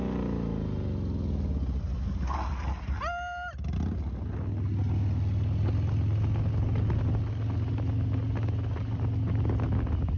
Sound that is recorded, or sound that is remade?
recorded